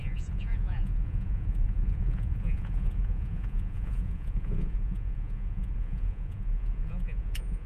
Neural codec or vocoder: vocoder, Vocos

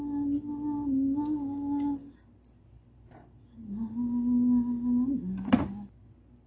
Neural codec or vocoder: none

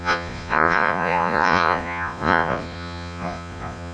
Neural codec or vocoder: vocoder, Vocos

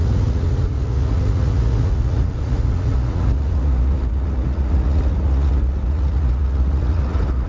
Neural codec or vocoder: vocoder, Vocos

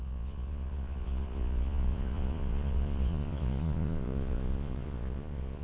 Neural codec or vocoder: vocoder, Vocos